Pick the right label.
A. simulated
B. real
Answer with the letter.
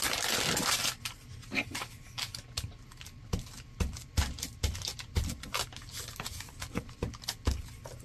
B